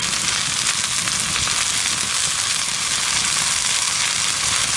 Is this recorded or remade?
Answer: recorded